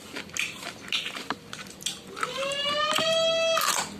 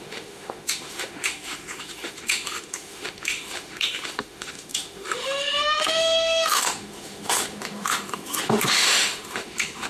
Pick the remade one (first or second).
second